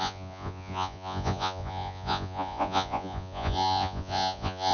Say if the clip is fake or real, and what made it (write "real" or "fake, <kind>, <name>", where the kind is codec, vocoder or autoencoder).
fake, vocoder, Vocos